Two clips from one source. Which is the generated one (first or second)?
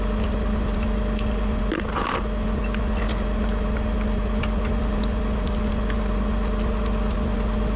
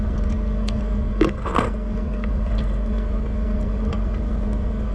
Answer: second